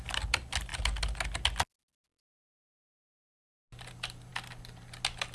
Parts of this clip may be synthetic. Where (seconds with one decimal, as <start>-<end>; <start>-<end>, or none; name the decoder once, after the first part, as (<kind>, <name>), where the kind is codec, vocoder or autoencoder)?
none